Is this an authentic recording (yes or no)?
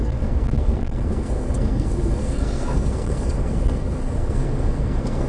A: no